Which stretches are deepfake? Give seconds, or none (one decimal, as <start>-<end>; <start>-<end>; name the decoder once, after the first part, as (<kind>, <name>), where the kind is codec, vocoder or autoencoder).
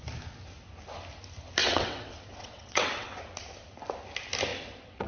1.6-3.2 (vocoder, WaveNeXt); 4.5-5.1